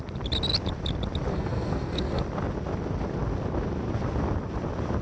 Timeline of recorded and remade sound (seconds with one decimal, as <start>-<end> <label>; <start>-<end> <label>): 0.0-1.3 recorded; 1.3-2.2 remade; 2.2-5.0 recorded